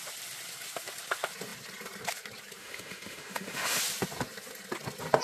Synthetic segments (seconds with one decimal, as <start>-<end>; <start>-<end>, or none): 2.6-3.8